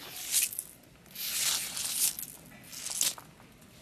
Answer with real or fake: real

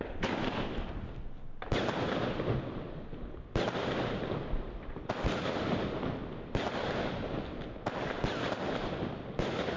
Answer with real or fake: real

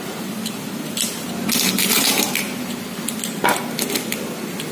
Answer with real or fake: real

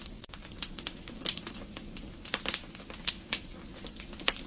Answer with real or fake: real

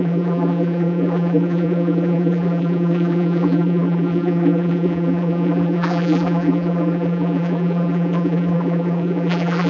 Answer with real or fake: fake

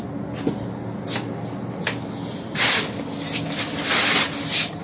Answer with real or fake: real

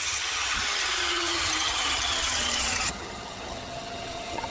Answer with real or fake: fake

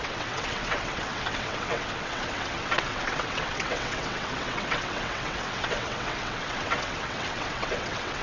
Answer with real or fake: fake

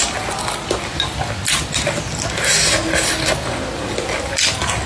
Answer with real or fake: real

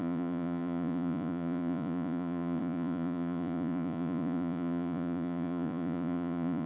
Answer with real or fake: fake